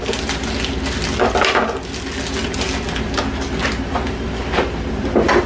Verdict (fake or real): real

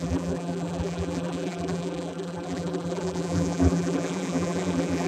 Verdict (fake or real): fake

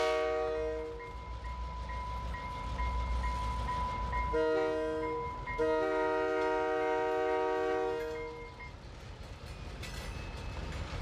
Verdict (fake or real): real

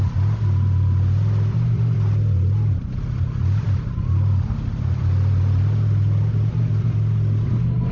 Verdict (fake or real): real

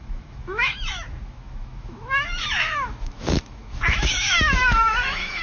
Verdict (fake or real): fake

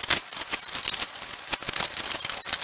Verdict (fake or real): real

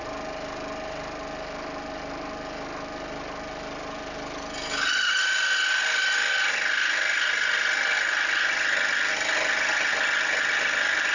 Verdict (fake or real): real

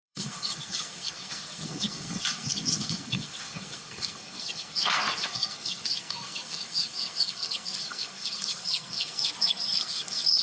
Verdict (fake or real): fake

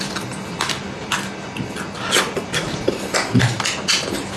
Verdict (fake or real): real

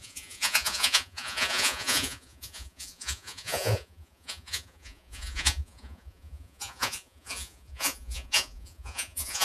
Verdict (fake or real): fake